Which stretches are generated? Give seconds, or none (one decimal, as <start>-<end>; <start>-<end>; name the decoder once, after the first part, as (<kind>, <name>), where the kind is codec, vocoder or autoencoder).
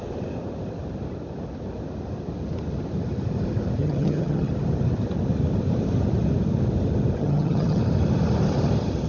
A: 3.8-4.5 (vocoder, HiFi-GAN); 7.2-7.8